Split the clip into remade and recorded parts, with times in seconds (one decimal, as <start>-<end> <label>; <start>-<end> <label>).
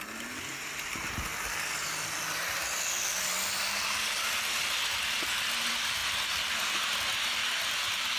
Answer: 0.0-8.2 recorded